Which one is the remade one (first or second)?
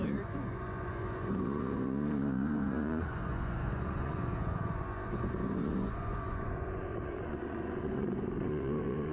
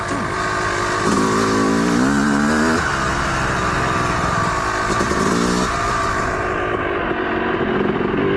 first